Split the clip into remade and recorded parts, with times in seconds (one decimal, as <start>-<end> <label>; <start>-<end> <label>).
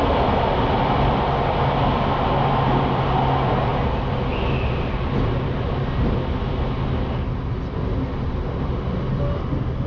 0.0-9.9 recorded